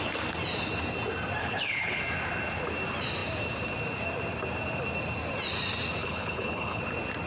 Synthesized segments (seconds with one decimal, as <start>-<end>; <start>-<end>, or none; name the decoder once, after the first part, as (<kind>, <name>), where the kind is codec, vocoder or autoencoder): 1.4-2.0 (codec, HILCodec); 6.0-6.8